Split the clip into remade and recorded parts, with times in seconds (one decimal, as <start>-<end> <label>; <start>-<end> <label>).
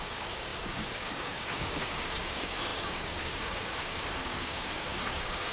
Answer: 0.0-5.5 remade